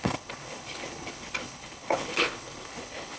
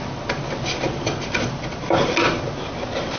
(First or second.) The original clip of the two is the second